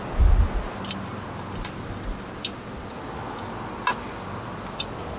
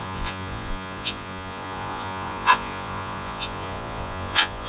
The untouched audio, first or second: first